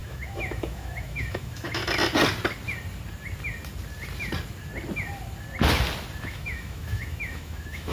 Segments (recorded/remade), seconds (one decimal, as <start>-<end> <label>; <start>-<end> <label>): 0.0-1.8 remade; 1.8-6.2 recorded; 6.2-7.9 remade

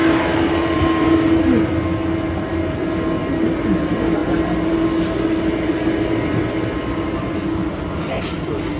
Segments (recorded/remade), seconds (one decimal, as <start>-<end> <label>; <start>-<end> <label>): 0.0-8.8 recorded

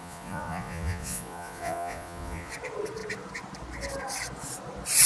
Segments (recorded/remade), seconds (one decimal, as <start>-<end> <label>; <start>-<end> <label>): 0.0-2.5 remade; 2.5-5.1 recorded

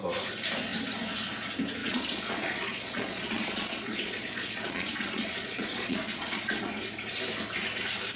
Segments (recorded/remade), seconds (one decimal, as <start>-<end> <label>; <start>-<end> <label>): 0.0-1.8 recorded; 1.8-6.7 remade; 6.7-8.2 recorded

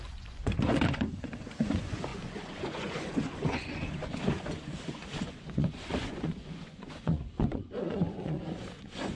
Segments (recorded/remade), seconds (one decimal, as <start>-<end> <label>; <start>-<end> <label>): 0.0-9.1 remade

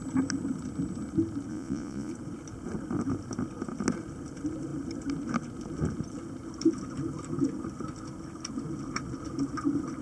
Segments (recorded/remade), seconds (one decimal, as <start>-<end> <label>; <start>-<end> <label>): 0.0-1.5 recorded; 1.5-2.1 remade; 2.1-10.0 recorded